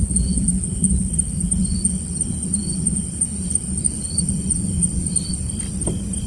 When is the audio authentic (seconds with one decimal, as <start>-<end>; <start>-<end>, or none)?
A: 1.1-1.7; 5.5-6.3